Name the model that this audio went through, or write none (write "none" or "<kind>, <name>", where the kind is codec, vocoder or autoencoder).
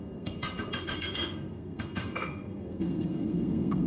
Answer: codec, SNAC